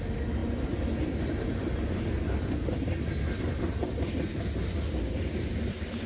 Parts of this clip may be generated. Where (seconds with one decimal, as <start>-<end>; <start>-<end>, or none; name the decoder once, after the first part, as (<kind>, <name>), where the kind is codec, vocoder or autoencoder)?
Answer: none